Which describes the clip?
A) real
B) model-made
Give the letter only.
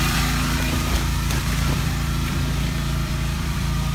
B